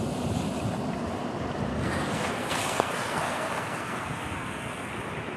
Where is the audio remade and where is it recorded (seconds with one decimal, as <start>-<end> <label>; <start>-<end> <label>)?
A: 0.0-1.7 recorded; 1.7-4.9 remade; 4.9-5.4 recorded